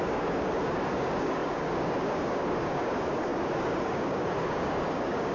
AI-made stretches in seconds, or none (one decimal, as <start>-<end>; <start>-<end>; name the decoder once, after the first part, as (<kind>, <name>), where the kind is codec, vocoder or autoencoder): 0.0-5.3 (codec, DAC)